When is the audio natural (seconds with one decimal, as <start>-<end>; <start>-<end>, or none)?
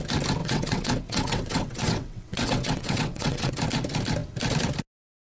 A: 0.0-0.4; 3.5-5.2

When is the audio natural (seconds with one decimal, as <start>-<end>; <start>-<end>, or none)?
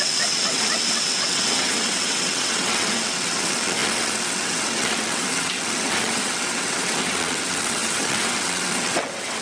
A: none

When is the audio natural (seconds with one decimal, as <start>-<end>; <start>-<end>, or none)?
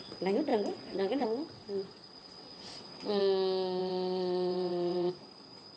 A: 0.0-0.5; 3.2-3.8; 5.1-5.8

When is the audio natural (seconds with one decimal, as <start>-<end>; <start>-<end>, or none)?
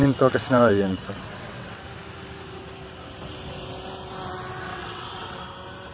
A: 1.8-4.7; 5.4-5.9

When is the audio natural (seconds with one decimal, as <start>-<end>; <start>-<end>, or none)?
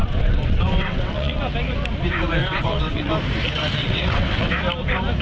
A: 1.4-2.4; 3.1-3.8; 4.5-5.2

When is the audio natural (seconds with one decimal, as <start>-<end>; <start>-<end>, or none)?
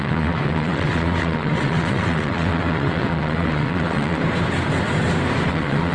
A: 4.2-5.5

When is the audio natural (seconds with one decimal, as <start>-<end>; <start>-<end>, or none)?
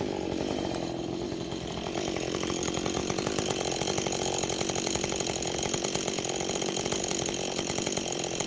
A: 0.0-8.5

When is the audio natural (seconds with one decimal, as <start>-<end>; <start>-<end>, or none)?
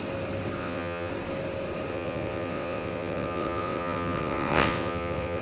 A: 0.0-0.6; 1.1-1.9